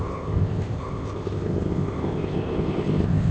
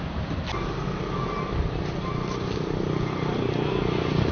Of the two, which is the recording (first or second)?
second